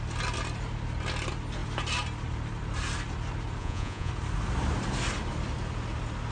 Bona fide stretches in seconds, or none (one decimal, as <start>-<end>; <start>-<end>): 0.0-3.6; 4.1-6.3

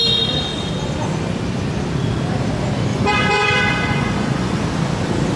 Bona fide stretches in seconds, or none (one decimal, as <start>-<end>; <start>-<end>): 0.0-2.9; 4.6-5.4

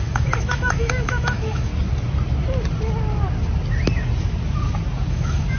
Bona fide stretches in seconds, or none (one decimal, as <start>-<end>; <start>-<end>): 1.7-5.1

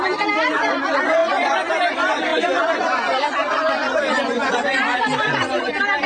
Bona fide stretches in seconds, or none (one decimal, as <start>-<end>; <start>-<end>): 0.0-6.1

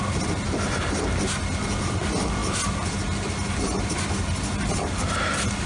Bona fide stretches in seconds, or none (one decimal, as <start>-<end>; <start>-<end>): 0.0-5.7

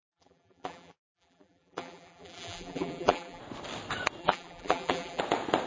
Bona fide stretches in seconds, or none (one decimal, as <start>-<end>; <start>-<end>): 3.4-4.2; 5.2-5.7

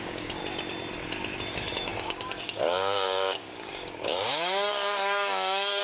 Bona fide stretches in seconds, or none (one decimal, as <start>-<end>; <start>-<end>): 0.4-1.5